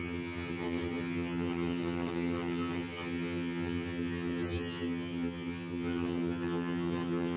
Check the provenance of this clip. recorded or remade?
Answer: remade